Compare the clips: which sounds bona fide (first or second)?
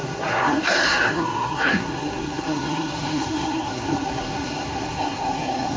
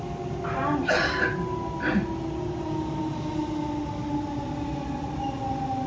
second